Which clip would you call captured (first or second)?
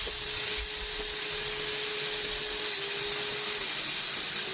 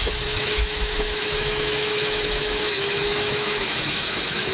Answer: first